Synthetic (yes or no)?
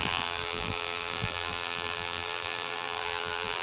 yes